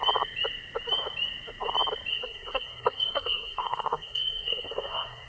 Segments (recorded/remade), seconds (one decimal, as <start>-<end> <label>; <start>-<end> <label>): 0.0-2.1 recorded; 2.1-5.3 remade